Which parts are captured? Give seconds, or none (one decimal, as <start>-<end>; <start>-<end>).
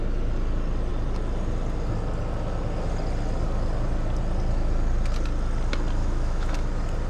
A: 0.0-6.0; 6.6-7.1